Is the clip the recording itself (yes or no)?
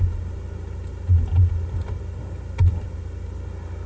yes